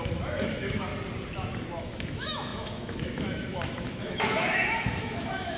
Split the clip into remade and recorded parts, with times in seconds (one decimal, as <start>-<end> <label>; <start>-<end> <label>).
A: 0.0-0.9 remade; 0.9-1.8 recorded; 1.8-5.6 remade